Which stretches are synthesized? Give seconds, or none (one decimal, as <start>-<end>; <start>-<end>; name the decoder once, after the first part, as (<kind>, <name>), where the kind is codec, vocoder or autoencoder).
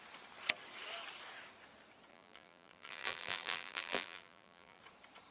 2.1-4.8 (vocoder, BigVGAN v2)